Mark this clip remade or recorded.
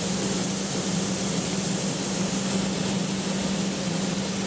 recorded